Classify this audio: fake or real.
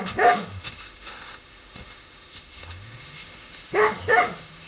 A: fake